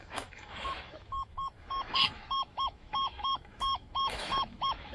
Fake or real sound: fake